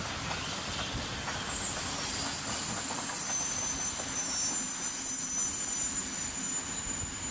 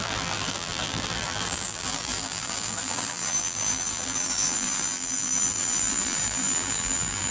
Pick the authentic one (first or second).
first